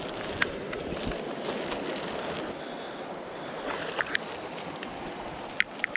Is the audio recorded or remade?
recorded